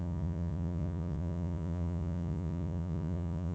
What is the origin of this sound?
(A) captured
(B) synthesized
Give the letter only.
B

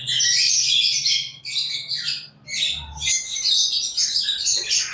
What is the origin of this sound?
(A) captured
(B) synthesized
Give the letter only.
A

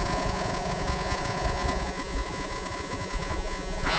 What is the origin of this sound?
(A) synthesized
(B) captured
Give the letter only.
A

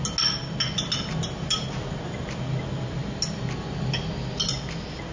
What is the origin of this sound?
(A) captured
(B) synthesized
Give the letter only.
A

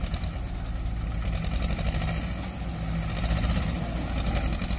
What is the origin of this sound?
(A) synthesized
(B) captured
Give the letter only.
B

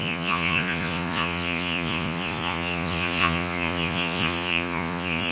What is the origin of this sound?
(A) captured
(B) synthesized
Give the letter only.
B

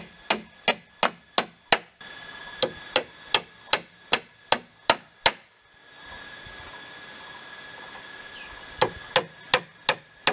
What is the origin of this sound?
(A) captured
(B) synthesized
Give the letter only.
A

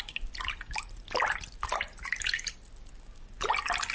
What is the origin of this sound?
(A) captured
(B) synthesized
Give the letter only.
A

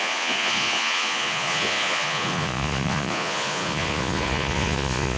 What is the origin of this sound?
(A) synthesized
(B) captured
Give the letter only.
A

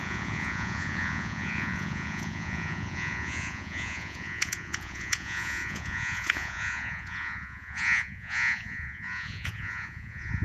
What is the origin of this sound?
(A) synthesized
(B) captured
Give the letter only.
A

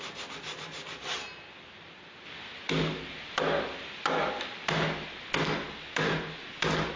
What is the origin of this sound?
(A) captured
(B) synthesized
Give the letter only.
A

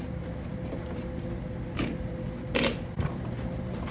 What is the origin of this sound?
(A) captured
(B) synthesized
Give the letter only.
A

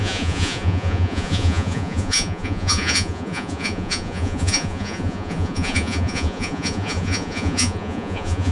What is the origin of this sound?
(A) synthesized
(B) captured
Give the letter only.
A